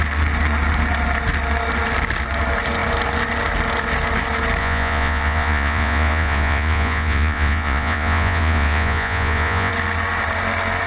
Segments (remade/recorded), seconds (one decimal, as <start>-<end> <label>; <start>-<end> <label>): 0.0-4.6 recorded; 4.6-9.7 remade; 9.7-10.9 recorded